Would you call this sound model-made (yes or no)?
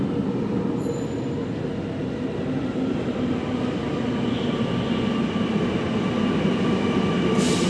no